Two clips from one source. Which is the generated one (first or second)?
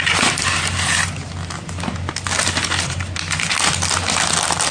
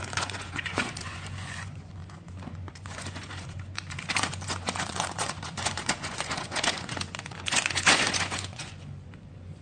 second